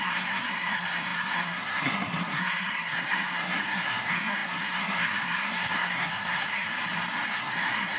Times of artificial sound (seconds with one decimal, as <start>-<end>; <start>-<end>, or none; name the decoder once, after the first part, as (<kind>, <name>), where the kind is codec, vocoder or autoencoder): 0.0-6.7 (codec, SNAC); 7.3-8.0